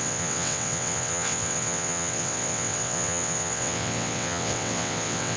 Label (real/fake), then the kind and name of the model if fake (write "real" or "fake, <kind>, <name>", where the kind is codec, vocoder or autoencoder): fake, vocoder, WaveNeXt